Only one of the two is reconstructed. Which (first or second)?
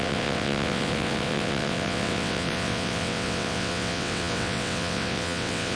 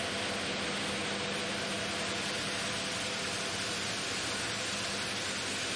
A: first